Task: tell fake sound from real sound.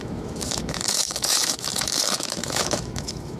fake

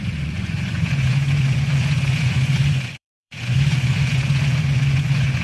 fake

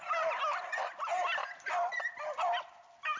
real